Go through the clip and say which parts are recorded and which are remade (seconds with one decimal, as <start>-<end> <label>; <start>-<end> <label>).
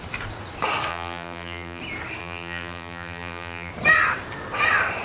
0.0-0.9 recorded; 0.9-1.8 remade; 1.8-2.2 recorded; 2.2-3.7 remade; 3.7-5.0 recorded